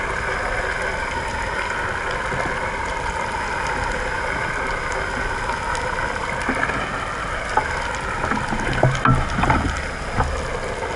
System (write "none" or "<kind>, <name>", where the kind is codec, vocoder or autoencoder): none